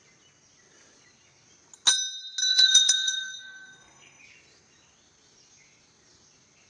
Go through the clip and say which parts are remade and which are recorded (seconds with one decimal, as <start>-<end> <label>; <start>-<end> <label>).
0.0-2.4 recorded; 2.4-4.2 remade; 4.2-6.7 recorded